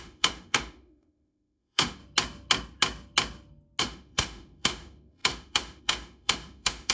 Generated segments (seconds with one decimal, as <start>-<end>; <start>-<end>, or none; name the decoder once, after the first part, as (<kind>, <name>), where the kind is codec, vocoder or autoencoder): 0.0-2.0 (autoencoder, DAC-VAE); 3.8-6.9